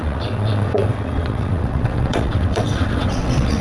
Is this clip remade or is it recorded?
remade